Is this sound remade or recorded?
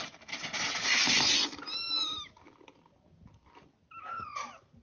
recorded